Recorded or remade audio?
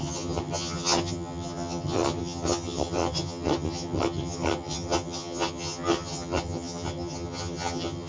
remade